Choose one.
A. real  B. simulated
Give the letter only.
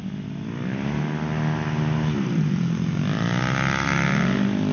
A